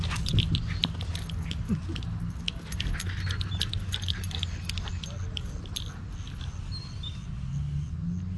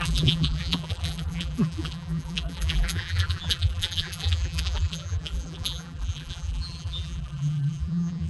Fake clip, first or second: second